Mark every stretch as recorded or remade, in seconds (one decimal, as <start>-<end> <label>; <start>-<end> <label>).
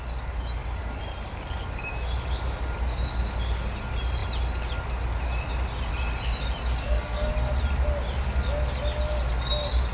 0.0-6.8 recorded; 6.8-7.3 remade; 7.3-9.9 recorded